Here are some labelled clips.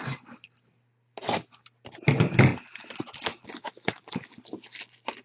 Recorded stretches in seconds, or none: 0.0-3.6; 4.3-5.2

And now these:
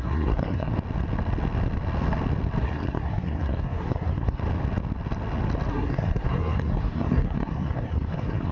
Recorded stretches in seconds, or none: 0.7-2.6; 4.4-5.7

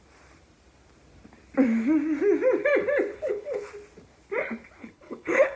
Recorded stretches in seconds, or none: 0.0-3.1; 3.7-4.8

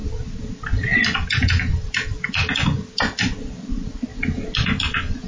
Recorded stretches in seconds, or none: 0.0-5.3

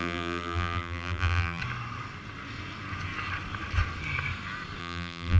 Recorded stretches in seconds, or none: 1.6-4.8